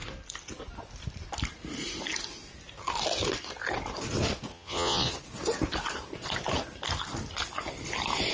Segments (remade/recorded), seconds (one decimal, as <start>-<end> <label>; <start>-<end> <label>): 0.0-4.5 recorded; 4.5-5.1 remade; 5.1-8.3 recorded